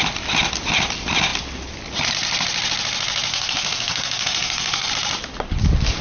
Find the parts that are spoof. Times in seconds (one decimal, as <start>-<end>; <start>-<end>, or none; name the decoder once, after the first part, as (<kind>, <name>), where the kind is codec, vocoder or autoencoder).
3.3-4.9 (codec, SNAC)